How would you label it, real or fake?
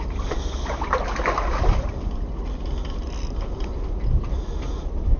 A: real